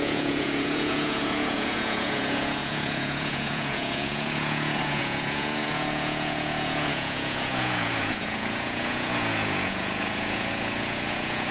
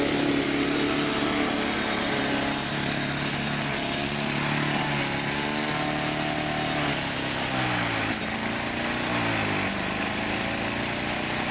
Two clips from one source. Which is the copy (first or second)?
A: first